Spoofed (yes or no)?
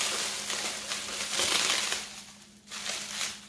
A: no